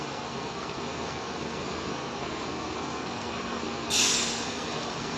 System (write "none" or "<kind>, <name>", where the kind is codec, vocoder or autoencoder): codec, SNAC